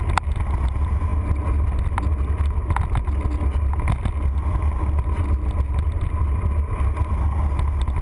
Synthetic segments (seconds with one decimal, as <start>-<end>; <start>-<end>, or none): none